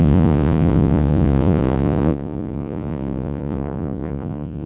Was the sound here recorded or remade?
remade